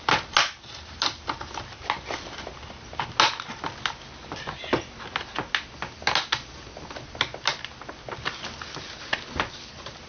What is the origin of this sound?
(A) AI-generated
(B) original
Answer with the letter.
B